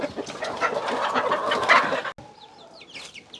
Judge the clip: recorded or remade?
recorded